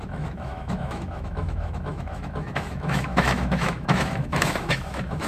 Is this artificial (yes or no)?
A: yes